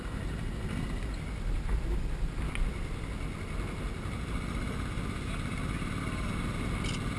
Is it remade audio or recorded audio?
recorded